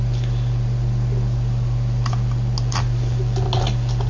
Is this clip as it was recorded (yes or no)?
yes